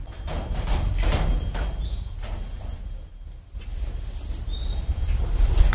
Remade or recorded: recorded